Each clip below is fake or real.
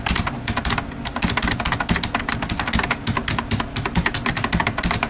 real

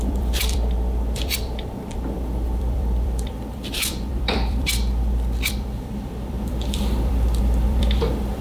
fake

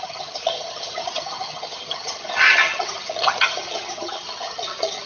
fake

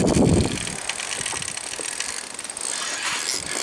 real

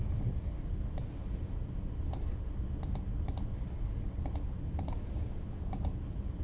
real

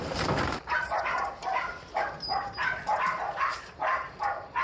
fake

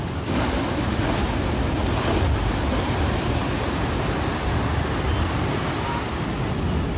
real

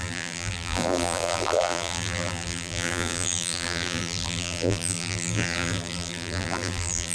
fake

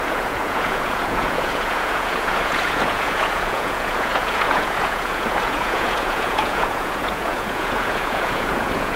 fake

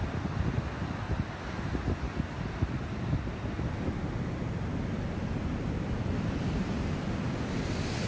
real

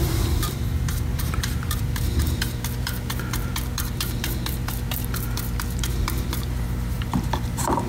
fake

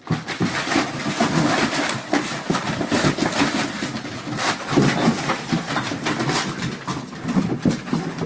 real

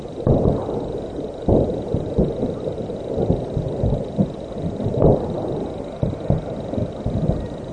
real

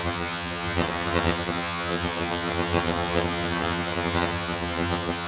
fake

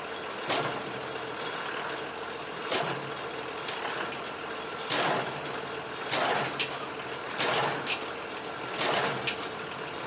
real